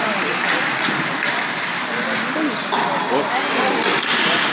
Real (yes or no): yes